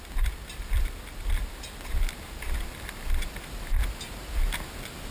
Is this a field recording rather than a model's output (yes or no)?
yes